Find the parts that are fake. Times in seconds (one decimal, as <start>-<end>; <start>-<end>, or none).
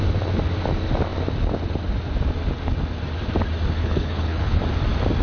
3.8-4.6